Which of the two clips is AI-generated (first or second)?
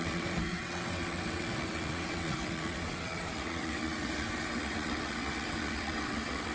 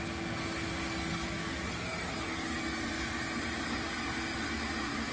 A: first